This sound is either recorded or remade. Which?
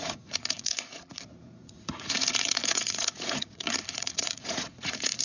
remade